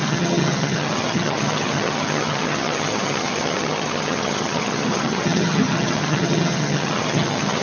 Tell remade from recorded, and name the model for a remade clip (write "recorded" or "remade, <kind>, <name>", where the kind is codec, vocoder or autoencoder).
remade, vocoder, HiFi-GAN